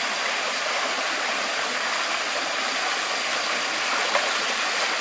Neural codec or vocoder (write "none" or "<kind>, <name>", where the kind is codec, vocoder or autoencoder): none